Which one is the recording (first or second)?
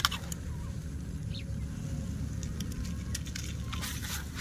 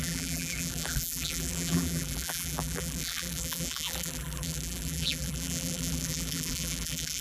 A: first